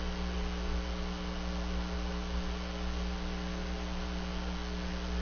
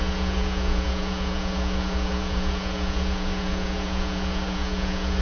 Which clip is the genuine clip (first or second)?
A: first